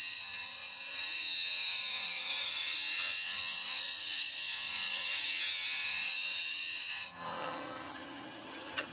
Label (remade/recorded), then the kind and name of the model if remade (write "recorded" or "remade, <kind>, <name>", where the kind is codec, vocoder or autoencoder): remade, vocoder, HiFi-GAN